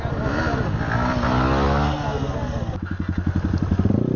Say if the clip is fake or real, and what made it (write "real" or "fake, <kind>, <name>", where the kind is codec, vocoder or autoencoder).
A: real